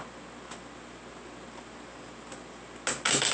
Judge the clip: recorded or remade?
recorded